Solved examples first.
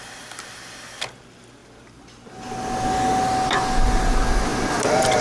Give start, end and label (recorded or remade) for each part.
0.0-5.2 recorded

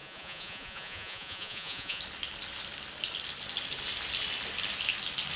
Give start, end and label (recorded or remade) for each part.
0.0-2.0 remade; 2.0-5.4 recorded